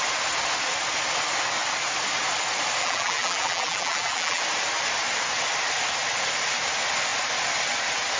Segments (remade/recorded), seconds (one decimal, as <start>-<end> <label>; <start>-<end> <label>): 0.0-2.8 recorded; 2.8-4.4 remade; 4.4-8.2 recorded